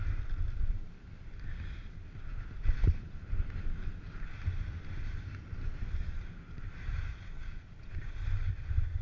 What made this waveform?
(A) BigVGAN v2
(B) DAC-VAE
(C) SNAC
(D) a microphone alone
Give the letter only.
D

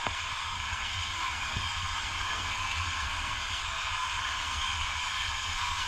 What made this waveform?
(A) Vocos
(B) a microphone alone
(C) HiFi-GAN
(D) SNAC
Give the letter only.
D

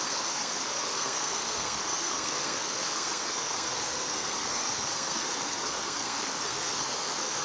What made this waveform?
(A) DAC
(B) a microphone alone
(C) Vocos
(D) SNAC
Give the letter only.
D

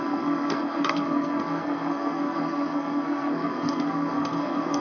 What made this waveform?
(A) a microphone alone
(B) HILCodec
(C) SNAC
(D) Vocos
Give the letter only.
C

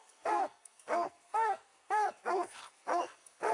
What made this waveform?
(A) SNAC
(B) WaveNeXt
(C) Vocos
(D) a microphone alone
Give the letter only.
A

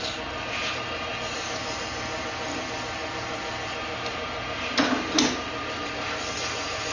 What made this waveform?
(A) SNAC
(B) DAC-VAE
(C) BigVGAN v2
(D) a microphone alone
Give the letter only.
D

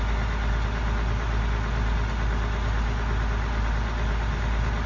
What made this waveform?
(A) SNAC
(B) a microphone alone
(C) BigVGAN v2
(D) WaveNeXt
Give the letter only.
B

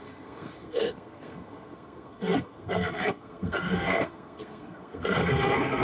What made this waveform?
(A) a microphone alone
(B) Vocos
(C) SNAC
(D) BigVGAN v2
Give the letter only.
C